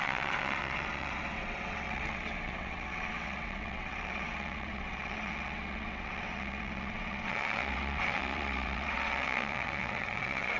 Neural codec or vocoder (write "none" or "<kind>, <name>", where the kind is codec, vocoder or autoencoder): vocoder, WaveNeXt